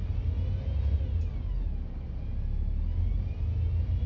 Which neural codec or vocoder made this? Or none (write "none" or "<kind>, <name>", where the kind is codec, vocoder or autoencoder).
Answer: none